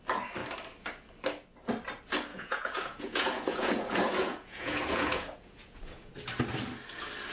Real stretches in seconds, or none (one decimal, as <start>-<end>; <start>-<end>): 0.0-2.3; 6.1-7.3